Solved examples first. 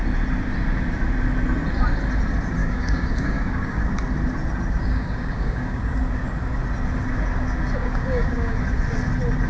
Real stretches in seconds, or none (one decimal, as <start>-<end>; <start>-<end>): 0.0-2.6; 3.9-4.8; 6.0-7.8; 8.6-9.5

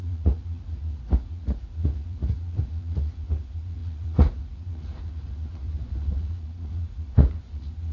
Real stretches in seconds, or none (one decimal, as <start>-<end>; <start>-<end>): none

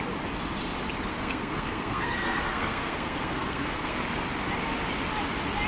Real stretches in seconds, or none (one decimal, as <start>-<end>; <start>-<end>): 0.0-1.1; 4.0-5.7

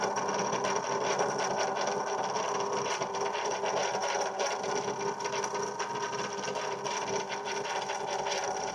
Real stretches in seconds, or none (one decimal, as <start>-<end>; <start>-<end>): none

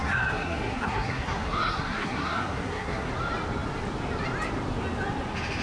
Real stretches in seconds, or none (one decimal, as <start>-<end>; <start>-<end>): 3.1-5.6